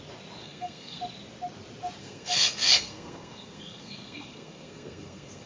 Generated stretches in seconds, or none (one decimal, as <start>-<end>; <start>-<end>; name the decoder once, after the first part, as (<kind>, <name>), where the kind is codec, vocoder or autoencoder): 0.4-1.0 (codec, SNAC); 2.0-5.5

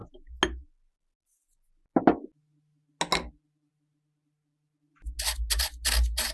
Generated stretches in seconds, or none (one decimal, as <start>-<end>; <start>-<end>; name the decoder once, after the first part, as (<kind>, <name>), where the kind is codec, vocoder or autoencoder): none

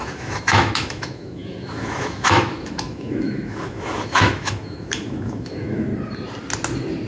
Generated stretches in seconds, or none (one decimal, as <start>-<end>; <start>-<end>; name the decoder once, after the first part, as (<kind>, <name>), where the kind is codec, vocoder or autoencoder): 0.0-5.9 (autoencoder, DAC-VAE)